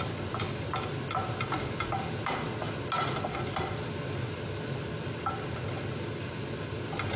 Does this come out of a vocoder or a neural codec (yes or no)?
no